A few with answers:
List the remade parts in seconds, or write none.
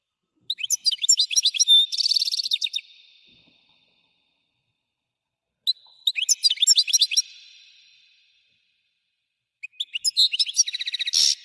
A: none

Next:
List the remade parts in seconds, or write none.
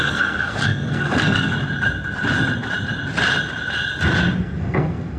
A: 0.0-1.5 (codec, SNAC); 4.4-5.2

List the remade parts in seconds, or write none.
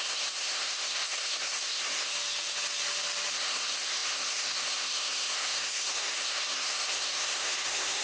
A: 0.0-2.1 (codec, SNAC); 3.3-8.0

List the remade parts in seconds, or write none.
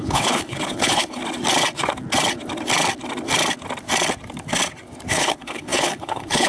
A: 0.0-1.2 (codec, HILCodec); 5.1-6.5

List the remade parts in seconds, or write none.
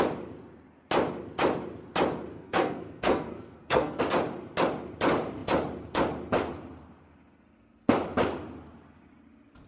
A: 2.3-4.0 (codec, SNAC)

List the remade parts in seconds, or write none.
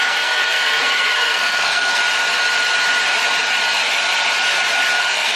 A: 0.0-2.0 (codec, SNAC); 5.0-5.4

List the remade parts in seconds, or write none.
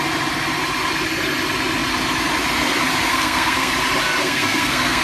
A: 3.1-3.7 (codec, SNAC); 4.2-5.0